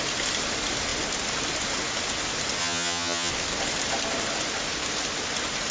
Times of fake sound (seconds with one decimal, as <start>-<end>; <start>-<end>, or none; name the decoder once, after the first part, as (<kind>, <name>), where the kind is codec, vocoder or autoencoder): 2.6-3.3 (vocoder, HiFi-GAN)